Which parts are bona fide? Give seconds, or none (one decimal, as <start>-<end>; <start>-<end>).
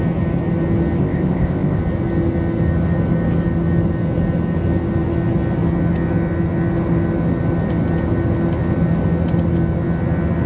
0.0-1.0; 1.8-10.5